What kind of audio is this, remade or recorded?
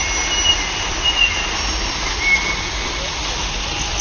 recorded